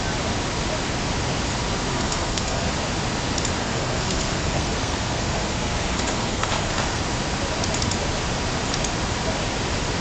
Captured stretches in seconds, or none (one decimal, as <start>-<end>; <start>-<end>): 0.0-1.9; 2.7-3.6; 7.0-10.0